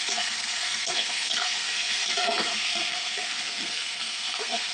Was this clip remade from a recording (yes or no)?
yes